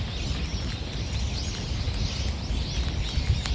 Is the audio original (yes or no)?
yes